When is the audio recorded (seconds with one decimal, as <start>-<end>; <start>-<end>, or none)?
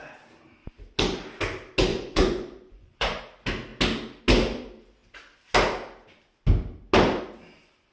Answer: 0.0-1.9; 3.2-7.9